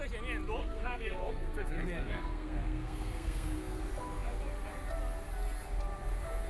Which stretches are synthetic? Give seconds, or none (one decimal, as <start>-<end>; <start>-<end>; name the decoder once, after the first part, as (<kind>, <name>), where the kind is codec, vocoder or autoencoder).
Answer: 0.6-3.8 (codec, SNAC)